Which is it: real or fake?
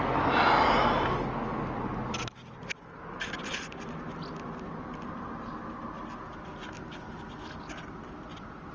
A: real